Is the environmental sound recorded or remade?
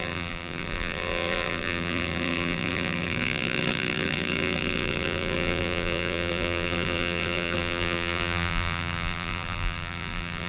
remade